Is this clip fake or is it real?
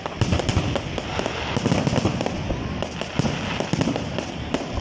real